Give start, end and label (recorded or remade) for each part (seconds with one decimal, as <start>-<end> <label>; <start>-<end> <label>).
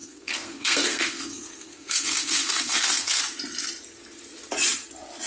0.0-3.2 remade; 3.2-5.3 recorded